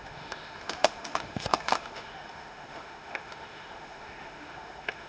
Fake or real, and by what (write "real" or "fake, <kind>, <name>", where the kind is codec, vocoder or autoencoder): fake, autoencoder, DAC-VAE